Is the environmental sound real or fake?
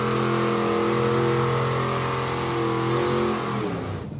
real